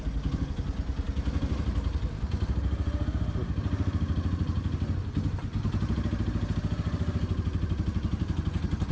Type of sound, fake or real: real